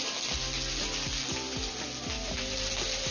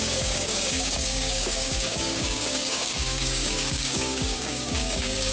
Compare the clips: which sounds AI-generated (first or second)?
second